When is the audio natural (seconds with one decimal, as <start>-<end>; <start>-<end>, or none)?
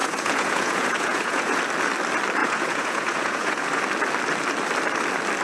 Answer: 1.6-2.4; 3.8-5.4